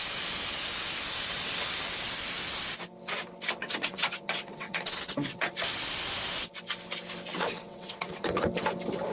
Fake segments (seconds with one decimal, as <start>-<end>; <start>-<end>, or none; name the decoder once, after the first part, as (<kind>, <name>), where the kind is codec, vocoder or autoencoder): 3.6-5.5 (vocoder, WaveNeXt); 7.3-8.4